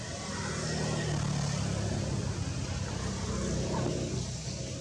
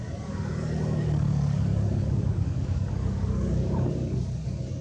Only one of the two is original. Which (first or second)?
first